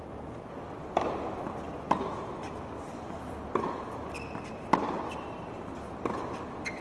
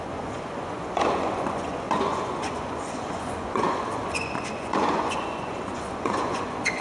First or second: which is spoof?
second